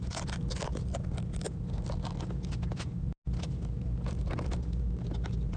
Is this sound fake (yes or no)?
no